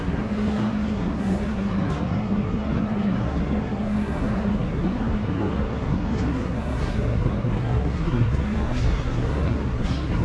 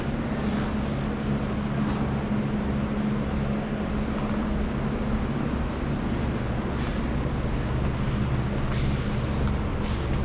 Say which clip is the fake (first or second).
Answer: first